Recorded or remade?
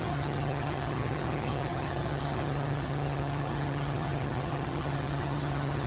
remade